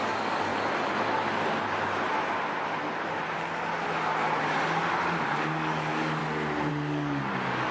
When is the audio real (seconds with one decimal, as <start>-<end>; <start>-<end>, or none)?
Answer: 0.5-5.1; 6.2-6.7